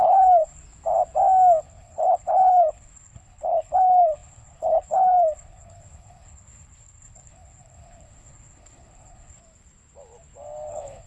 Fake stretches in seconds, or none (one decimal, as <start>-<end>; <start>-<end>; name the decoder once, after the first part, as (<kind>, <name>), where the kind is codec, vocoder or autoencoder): 0.0-0.6 (codec, HILCodec); 1.6-9.4; 10.7-11.1